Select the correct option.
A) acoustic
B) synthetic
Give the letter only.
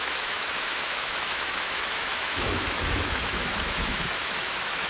B